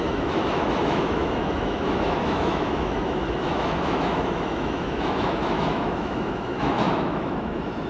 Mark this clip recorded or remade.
remade